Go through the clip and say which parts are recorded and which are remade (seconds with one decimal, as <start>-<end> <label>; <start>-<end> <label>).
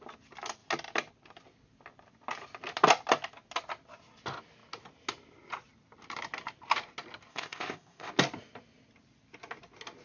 0.0-7.3 recorded; 7.3-8.1 remade; 8.1-10.0 recorded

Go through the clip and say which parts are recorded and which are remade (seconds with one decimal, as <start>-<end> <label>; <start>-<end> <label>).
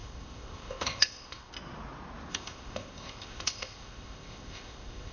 0.0-1.5 remade; 1.5-2.3 recorded; 2.3-5.1 remade